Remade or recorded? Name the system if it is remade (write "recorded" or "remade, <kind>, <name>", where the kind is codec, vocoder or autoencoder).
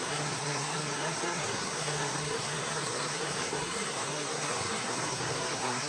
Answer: remade, codec, SNAC